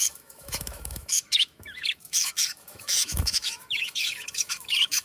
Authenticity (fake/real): fake